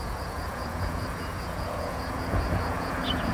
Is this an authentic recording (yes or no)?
no